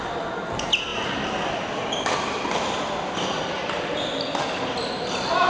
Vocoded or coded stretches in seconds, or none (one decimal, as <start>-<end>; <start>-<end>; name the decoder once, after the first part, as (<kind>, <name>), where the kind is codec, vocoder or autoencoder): none